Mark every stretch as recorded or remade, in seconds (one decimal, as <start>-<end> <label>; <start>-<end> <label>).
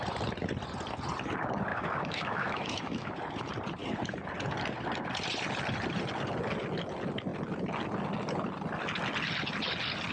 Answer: 0.0-1.7 recorded; 1.7-3.1 remade; 3.1-10.1 recorded